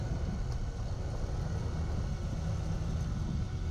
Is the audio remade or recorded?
recorded